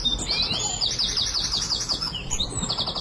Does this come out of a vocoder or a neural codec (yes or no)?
no